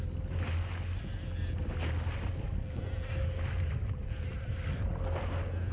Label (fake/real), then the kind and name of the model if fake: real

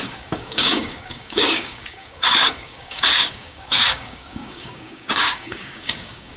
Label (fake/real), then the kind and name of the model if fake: fake, codec, DAC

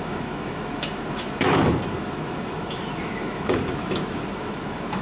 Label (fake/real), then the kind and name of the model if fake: fake, autoencoder, DAC-VAE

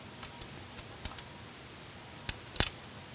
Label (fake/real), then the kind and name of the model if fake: real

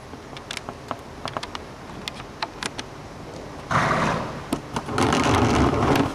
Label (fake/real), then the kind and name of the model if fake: real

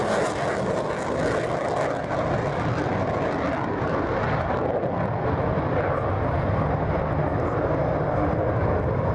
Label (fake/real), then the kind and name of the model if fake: real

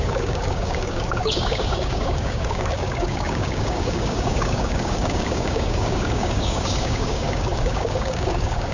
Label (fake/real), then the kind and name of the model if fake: fake, codec, DAC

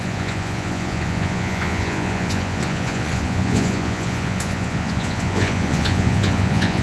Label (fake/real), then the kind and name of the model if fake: fake, vocoder, Vocos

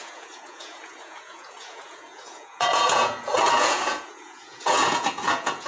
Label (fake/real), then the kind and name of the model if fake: fake, vocoder, Vocos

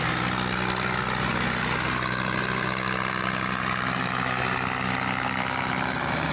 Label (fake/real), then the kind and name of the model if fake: real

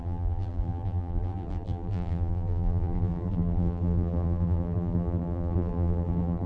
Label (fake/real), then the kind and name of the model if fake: fake, vocoder, BigVGAN v2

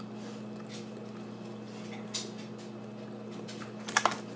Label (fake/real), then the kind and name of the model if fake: real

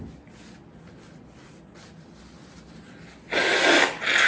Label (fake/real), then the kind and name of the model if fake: real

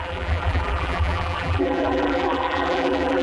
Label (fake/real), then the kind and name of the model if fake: fake, vocoder, BigVGAN v2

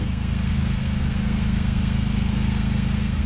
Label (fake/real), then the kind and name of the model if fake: fake, codec, SNAC